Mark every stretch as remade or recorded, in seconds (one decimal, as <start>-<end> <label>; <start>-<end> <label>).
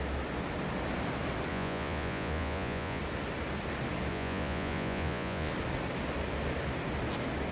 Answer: 0.0-1.5 recorded; 1.5-3.0 remade; 3.0-4.1 recorded; 4.1-5.5 remade; 5.5-7.5 recorded